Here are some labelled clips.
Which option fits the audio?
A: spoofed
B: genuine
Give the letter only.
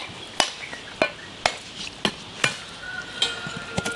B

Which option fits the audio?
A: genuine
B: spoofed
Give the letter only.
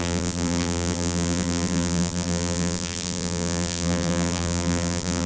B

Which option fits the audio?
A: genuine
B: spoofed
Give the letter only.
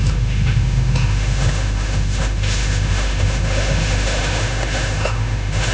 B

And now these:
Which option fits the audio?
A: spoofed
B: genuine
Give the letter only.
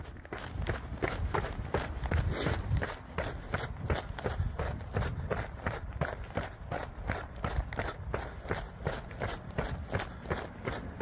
B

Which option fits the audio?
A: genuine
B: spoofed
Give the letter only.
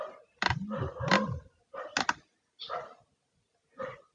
A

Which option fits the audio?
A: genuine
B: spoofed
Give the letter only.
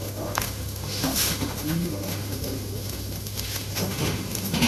B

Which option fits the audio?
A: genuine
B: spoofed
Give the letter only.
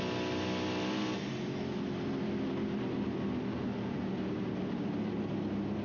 A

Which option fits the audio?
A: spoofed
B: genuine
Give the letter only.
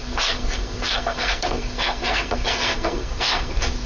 A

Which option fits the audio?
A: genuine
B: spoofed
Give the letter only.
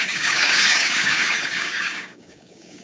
B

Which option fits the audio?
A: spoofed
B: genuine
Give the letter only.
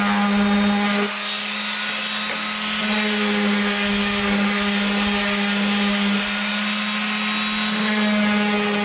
B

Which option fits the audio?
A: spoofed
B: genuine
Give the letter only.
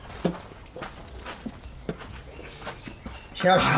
B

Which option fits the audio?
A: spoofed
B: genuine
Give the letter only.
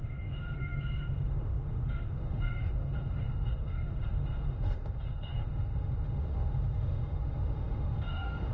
A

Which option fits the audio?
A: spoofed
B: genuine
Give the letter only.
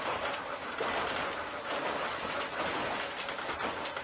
B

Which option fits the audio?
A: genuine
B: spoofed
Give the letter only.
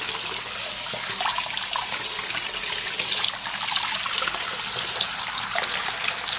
A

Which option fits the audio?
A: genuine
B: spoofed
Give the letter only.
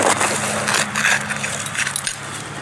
A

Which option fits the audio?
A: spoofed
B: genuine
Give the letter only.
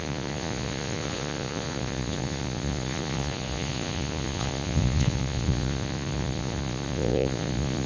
A